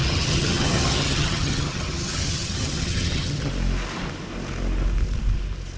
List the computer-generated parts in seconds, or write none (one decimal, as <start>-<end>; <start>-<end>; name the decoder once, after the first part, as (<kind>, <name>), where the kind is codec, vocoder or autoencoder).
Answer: 0.0-3.5 (vocoder, HiFi-GAN)